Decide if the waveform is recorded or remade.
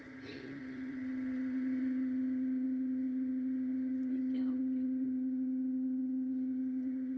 remade